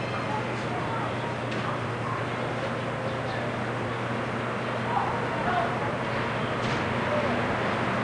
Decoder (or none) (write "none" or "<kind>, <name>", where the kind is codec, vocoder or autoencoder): none